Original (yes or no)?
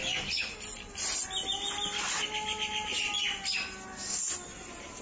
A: yes